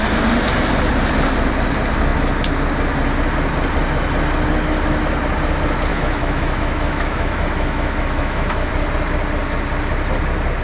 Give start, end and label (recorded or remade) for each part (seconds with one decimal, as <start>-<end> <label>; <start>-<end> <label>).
0.0-5.9 recorded; 5.9-8.7 remade; 8.7-10.6 recorded